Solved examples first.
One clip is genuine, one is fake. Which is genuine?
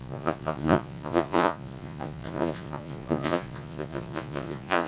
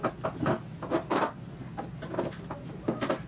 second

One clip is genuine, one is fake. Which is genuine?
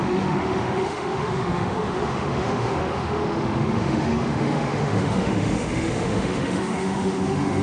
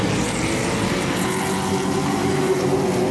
second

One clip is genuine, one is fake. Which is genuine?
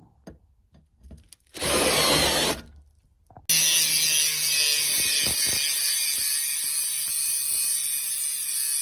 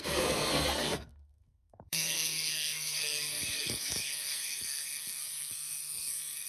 first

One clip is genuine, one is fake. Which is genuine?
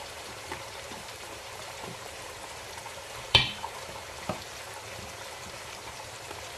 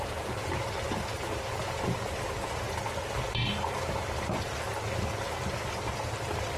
second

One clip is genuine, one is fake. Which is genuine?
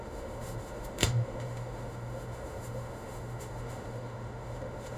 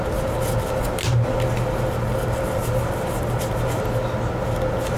second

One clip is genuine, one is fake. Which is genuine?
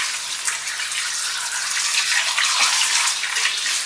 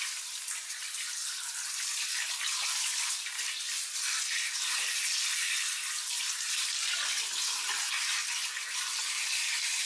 first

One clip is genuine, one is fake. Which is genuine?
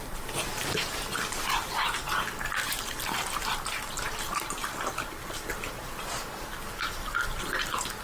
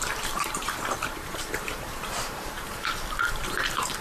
first